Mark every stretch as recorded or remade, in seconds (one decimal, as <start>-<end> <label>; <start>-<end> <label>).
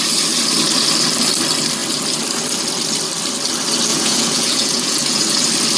0.0-3.9 recorded; 3.9-5.2 remade; 5.2-5.8 recorded